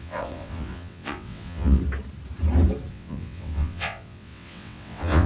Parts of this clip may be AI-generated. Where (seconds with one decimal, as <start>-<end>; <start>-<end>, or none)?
0.0-1.8; 2.9-5.3